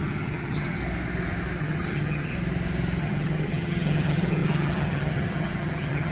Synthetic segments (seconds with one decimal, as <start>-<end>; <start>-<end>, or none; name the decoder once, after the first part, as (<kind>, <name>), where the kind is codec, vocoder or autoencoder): 0.0-0.8 (vocoder, HiFi-GAN); 1.6-2.3; 3.0-6.1